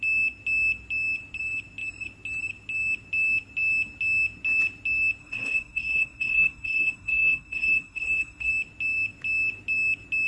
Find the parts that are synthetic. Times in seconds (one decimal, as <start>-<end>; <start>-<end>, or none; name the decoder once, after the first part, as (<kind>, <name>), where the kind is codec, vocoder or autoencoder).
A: 5.2-8.5 (codec, SNAC)